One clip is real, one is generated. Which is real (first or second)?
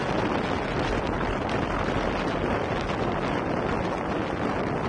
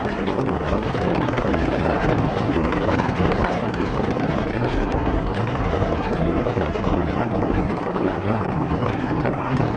first